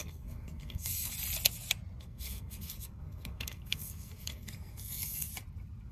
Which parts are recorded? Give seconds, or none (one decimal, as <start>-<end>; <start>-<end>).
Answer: 1.1-2.0; 5.3-5.9